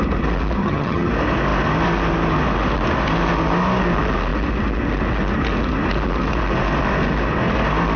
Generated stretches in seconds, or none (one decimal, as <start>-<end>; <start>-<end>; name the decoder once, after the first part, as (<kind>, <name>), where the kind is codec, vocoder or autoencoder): 0.6-1.1 (vocoder, HiFi-GAN)